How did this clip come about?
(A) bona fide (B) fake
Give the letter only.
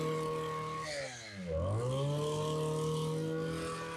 A